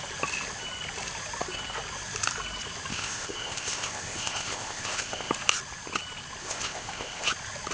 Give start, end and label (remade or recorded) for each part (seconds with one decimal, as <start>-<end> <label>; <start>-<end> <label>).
0.0-2.9 recorded; 2.9-5.3 remade; 5.3-6.4 recorded; 6.4-7.3 remade; 7.3-7.7 recorded